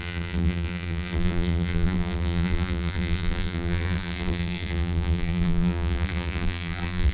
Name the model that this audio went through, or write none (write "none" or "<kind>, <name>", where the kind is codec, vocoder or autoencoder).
vocoder, BigVGAN v2